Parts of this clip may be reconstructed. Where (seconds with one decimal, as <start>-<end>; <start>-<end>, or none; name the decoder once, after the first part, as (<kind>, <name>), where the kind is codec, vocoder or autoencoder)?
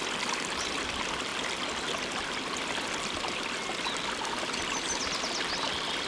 none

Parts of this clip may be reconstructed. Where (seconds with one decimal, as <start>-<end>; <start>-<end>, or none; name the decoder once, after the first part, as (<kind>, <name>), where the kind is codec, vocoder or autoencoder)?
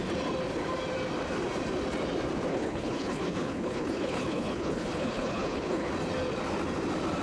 2.5-5.9 (codec, HILCodec)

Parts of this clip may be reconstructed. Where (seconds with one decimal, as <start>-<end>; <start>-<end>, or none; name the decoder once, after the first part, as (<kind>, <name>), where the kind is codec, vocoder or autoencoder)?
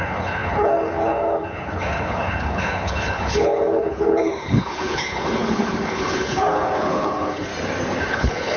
0.0-7.5 (codec, HILCodec); 8.1-8.6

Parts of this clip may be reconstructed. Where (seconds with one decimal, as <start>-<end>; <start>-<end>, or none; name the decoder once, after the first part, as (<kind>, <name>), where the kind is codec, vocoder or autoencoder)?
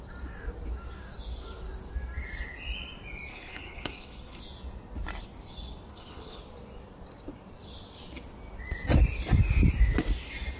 3.3-4.4 (codec, HILCodec); 5.9-6.4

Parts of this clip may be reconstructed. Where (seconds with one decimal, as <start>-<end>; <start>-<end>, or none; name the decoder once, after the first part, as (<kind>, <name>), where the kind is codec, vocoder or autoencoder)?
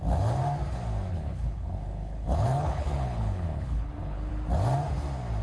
1.1-4.3 (codec, HILCodec)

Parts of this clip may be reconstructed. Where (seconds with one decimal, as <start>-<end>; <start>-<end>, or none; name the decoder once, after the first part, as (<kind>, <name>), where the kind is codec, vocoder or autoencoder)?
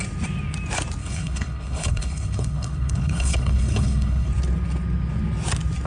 1.0-4.3 (codec, HILCodec)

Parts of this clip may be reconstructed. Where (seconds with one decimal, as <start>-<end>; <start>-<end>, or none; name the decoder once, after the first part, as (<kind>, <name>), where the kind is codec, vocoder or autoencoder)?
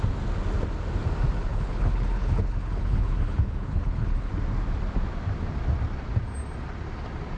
1.5-4.3 (codec, HILCodec)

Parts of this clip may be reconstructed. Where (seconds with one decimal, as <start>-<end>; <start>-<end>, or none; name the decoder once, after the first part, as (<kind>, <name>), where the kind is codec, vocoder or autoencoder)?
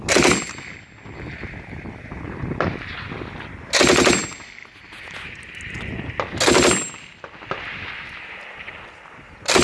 none